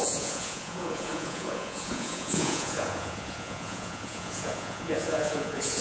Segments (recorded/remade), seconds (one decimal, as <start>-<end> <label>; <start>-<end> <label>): 0.0-5.8 remade